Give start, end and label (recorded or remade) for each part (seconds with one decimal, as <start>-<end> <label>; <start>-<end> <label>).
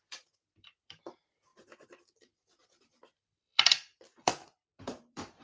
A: 0.0-5.4 remade